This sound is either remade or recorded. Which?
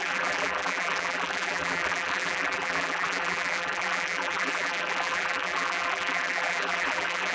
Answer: remade